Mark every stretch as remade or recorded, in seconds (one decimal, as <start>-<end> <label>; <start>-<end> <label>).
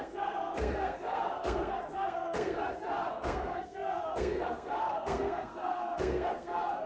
0.0-2.6 remade; 2.6-3.1 recorded; 3.1-6.9 remade